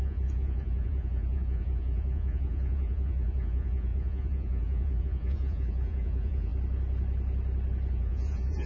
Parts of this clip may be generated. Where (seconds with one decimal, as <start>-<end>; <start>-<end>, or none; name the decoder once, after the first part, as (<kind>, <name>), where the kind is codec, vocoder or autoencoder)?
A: 0.0-6.5 (vocoder, Vocos); 7.9-8.7